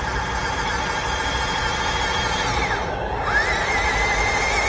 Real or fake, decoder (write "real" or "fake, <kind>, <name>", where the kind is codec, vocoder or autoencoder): real